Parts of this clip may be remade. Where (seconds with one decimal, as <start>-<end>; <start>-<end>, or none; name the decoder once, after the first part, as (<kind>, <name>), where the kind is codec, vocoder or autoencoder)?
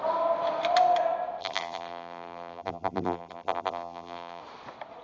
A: 1.4-4.4 (vocoder, BigVGAN v2)